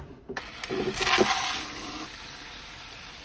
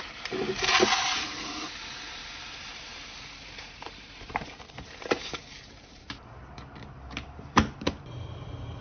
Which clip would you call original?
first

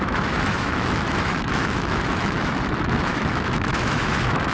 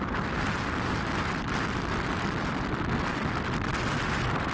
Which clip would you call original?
second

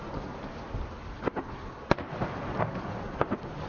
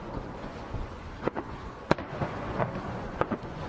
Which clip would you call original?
first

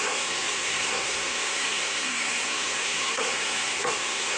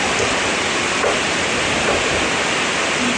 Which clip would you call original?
second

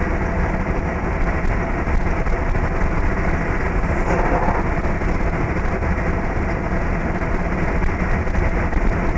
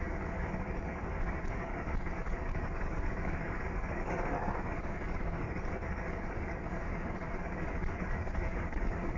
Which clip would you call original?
first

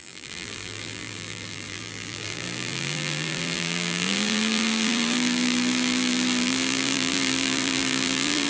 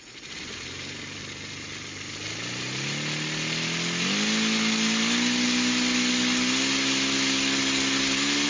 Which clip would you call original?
second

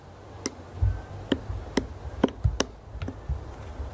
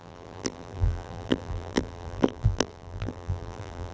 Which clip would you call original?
first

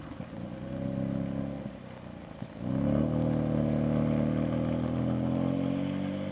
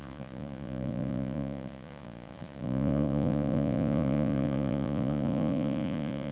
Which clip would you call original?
first